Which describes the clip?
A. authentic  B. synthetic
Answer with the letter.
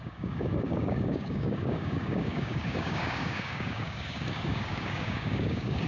B